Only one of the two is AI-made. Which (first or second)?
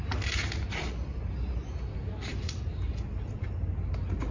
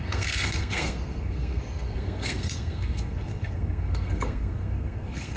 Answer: second